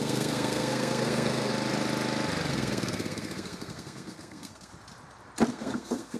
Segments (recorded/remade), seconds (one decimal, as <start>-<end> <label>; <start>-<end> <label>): 0.0-1.5 remade; 1.5-2.5 recorded; 2.5-4.7 remade; 4.7-5.5 recorded; 5.5-6.2 remade